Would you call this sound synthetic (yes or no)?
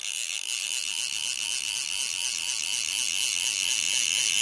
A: no